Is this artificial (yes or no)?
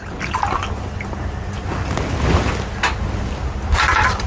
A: no